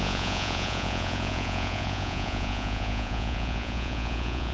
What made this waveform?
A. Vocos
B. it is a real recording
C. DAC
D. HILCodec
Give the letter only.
A